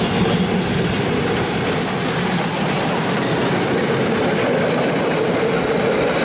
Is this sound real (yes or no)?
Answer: yes